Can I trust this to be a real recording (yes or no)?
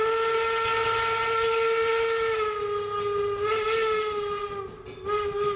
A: yes